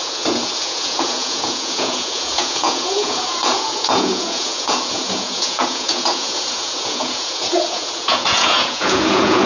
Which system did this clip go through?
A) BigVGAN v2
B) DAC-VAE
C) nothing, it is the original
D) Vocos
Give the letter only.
D